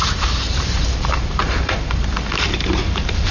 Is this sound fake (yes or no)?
yes